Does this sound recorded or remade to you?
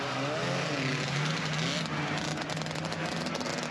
recorded